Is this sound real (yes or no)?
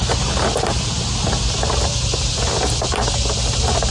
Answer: yes